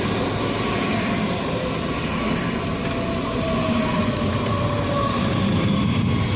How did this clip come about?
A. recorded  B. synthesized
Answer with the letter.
A